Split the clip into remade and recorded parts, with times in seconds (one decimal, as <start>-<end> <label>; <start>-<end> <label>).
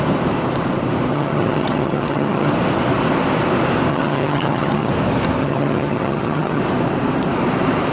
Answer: 0.0-1.1 recorded; 1.1-2.5 remade; 2.5-3.9 recorded; 3.9-4.9 remade; 4.9-5.4 recorded; 5.4-6.6 remade; 6.6-7.9 recorded